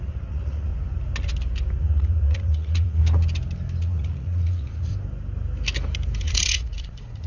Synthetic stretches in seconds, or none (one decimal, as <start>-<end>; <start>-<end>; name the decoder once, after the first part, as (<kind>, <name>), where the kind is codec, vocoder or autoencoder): 0.0-0.7 (vocoder, Vocos); 1.8-3.0; 3.8-4.9; 6.2-7.3